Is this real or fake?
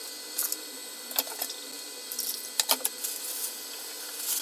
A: real